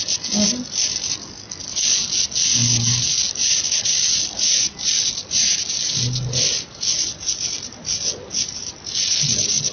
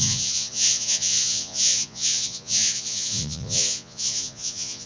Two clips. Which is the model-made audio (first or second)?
second